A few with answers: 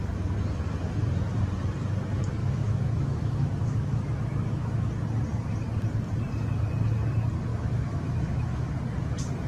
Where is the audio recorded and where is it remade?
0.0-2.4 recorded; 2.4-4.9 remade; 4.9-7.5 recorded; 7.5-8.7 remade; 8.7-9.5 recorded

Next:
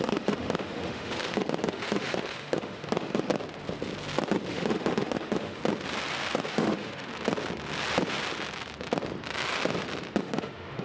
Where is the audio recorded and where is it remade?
0.0-3.3 remade; 3.3-4.5 recorded; 4.5-5.6 remade; 5.6-6.5 recorded; 6.5-7.1 remade; 7.1-10.2 recorded; 10.2-10.8 remade

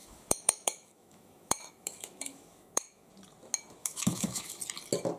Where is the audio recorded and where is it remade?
0.0-3.1 remade; 3.1-3.8 recorded; 3.8-4.6 remade; 4.6-5.2 recorded